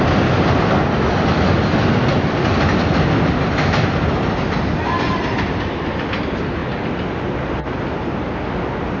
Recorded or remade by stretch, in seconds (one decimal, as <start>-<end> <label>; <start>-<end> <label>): 0.0-9.0 recorded